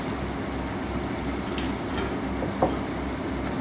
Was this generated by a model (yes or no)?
no